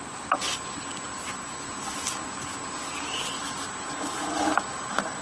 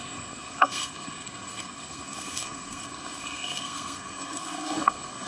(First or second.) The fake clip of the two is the second